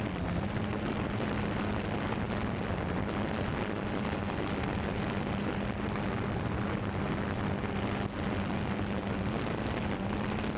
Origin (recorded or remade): recorded